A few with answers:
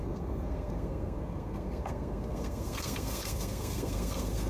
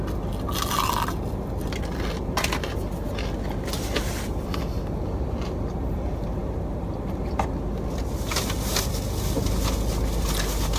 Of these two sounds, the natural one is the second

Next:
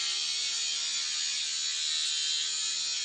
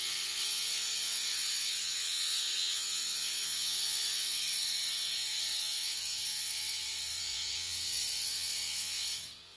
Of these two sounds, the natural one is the first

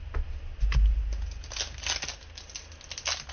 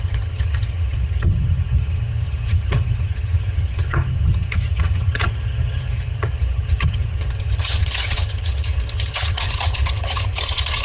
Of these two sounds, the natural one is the first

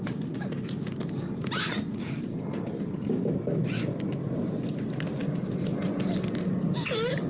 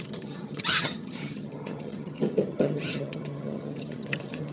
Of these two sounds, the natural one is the first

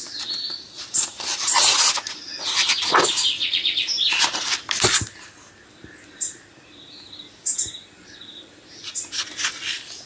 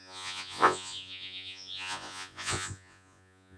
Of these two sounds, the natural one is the first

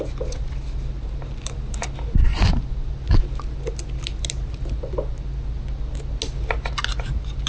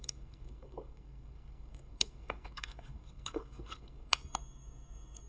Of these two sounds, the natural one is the first